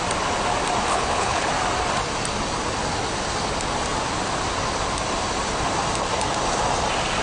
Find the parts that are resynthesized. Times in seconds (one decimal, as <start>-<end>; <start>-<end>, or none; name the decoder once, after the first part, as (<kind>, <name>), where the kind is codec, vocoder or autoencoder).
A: 0.9-1.5 (codec, HILCodec)